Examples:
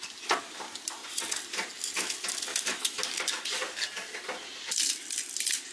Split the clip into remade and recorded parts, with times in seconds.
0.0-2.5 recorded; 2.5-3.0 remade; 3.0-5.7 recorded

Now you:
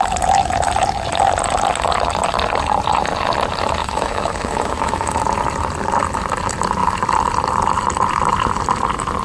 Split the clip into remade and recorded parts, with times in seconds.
0.0-3.8 recorded; 3.8-5.2 remade; 5.2-9.2 recorded

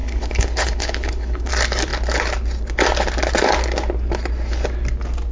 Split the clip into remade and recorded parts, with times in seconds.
0.0-1.5 remade; 1.5-5.3 recorded

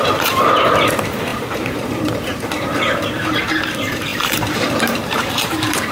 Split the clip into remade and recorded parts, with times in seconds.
0.0-5.9 remade

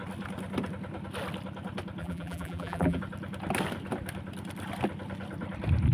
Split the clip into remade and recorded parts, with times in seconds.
0.0-2.0 recorded; 2.0-3.0 remade; 3.0-5.9 recorded

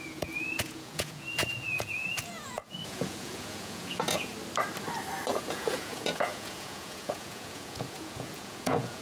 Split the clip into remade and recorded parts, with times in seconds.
0.0-4.3 remade; 4.3-5.3 recorded; 5.3-9.0 remade

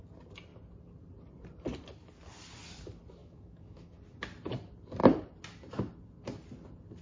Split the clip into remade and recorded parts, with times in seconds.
0.0-3.2 recorded; 3.2-4.0 remade; 4.0-7.0 recorded

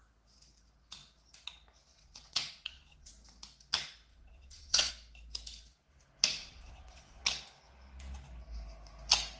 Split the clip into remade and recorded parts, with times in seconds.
0.0-1.9 recorded; 1.9-3.1 remade; 3.1-4.1 recorded; 4.1-4.9 remade; 4.9-6.4 recorded; 6.4-7.2 remade; 7.2-9.4 recorded